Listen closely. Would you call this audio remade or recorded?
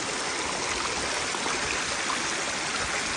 recorded